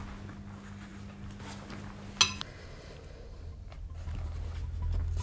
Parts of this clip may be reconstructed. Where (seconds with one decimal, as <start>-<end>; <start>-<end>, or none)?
none